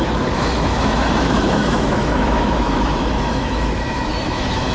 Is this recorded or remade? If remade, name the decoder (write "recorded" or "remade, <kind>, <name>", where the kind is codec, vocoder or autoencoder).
remade, autoencoder, DAC-VAE